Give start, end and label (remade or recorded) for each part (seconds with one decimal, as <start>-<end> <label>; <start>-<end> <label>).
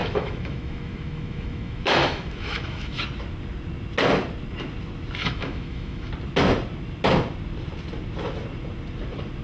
0.0-3.0 remade; 3.0-5.2 recorded; 5.2-6.1 remade; 6.1-9.4 recorded